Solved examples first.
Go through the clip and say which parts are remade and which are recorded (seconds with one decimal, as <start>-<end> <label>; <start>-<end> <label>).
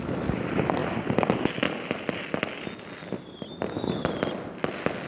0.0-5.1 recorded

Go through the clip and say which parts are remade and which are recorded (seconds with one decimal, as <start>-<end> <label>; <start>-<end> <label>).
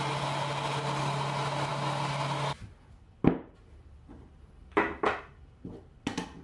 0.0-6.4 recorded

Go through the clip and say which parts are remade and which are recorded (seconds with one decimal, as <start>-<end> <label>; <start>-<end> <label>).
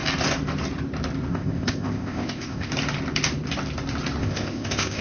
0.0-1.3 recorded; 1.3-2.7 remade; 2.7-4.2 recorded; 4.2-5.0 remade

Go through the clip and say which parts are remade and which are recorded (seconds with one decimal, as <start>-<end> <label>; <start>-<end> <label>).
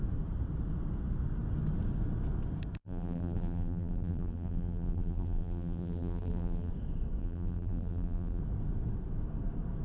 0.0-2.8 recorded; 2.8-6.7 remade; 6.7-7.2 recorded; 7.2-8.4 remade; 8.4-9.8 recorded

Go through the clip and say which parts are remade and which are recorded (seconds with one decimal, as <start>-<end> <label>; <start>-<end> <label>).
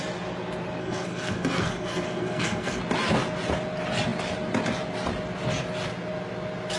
0.0-0.8 recorded; 0.8-2.8 remade; 2.8-6.8 recorded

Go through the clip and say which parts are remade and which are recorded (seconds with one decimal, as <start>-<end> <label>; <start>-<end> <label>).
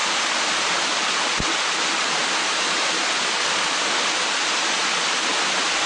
0.0-2.2 recorded; 2.2-2.9 remade; 2.9-5.9 recorded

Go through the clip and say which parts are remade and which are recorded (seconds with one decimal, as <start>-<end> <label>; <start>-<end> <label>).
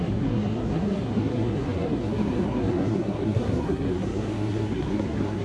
0.0-5.4 remade